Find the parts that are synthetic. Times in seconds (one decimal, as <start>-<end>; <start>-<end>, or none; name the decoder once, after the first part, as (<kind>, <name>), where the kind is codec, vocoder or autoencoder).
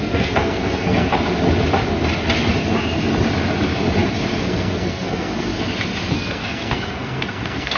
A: 0.0-1.1 (codec, SNAC); 4.4-5.5; 6.1-7.8